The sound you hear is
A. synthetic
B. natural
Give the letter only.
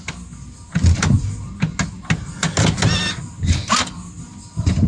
B